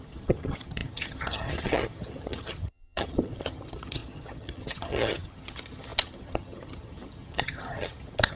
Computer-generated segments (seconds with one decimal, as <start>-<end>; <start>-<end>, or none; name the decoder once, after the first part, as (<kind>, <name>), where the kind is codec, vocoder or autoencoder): 0.0-8.4 (vocoder, HiFi-GAN)